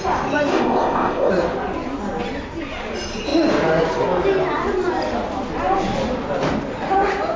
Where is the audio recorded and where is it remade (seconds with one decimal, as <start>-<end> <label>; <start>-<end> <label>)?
0.0-0.5 recorded; 0.5-1.3 remade; 1.3-7.4 recorded